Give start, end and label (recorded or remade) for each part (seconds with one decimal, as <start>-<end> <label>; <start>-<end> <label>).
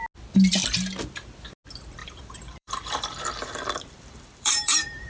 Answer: 0.0-2.0 recorded; 2.0-5.1 remade